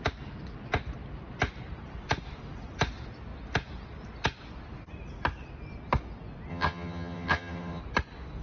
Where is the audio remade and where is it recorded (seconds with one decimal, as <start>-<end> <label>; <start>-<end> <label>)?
0.0-6.5 recorded; 6.5-7.8 remade; 7.8-8.4 recorded